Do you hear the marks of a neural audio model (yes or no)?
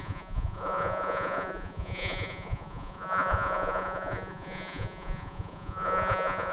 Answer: yes